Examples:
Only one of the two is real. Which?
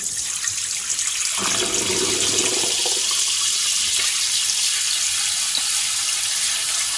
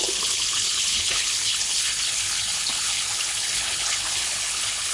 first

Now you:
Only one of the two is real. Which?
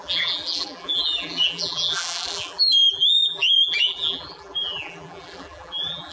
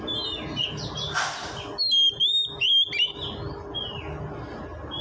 second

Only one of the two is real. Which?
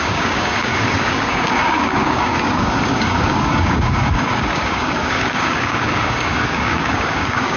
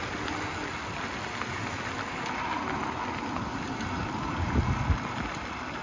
second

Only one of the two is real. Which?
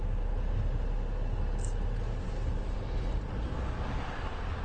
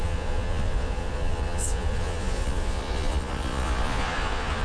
first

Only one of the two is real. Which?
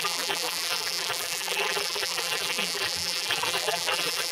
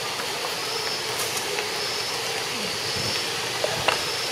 second